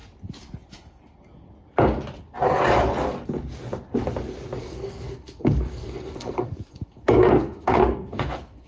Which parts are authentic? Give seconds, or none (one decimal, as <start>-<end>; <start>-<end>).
0.0-4.6